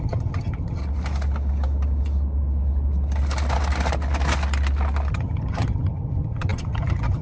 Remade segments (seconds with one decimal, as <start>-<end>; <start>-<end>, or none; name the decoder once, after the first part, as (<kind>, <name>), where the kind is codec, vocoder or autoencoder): 0.0-0.8 (vocoder, HiFi-GAN); 5.1-7.2